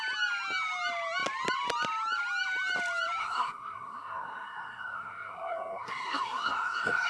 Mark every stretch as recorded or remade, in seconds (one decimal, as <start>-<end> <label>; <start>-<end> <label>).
0.0-3.2 recorded; 3.2-7.1 remade